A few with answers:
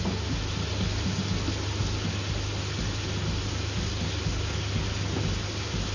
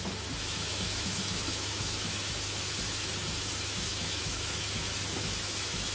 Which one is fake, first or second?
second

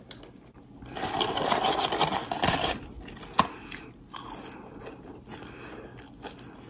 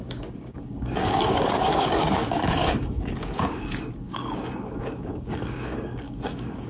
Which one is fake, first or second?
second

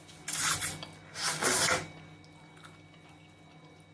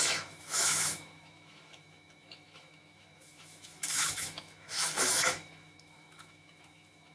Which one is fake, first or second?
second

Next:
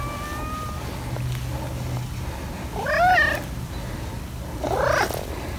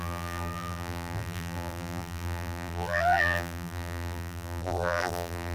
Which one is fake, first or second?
second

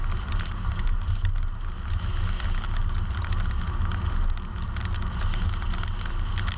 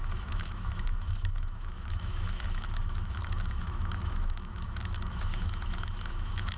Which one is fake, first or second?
second